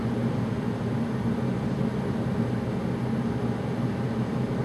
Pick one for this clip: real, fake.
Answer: real